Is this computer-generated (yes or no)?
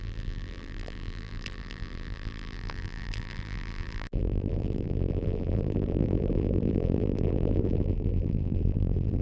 yes